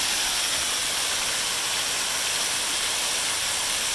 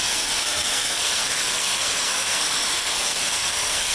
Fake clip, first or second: second